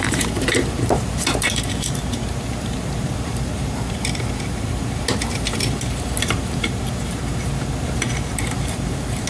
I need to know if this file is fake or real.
fake